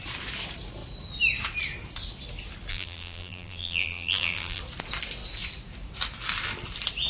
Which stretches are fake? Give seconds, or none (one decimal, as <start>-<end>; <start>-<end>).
2.7-4.6